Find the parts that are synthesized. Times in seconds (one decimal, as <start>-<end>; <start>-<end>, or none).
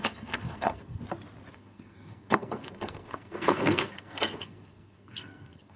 0.0-1.0; 1.5-5.8